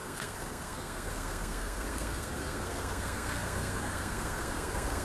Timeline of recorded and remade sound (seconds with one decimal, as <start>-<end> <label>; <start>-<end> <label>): 0.0-5.0 remade

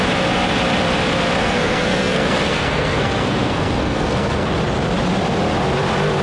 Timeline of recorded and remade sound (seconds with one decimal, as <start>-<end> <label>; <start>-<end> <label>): 0.0-1.4 recorded; 1.4-4.5 remade; 4.5-6.2 recorded

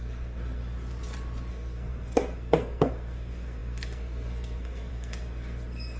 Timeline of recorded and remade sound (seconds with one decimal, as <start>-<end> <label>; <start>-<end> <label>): 0.0-0.6 remade; 0.6-1.5 recorded; 1.5-6.0 remade

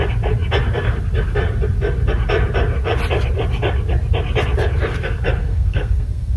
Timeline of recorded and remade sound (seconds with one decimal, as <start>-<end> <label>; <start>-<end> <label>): 0.0-5.4 recorded; 5.4-6.4 remade

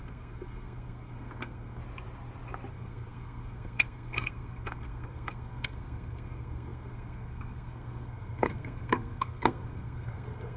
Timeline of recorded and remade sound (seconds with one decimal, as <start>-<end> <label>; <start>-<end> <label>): 0.0-1.8 remade; 1.8-2.7 recorded; 2.7-10.6 remade